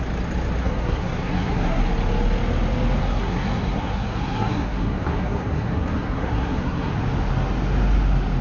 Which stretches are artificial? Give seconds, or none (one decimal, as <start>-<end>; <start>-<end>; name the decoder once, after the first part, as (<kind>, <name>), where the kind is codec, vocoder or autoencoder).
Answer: 0.6-1.8 (codec, SNAC); 3.0-6.9